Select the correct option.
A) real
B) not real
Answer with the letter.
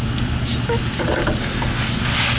A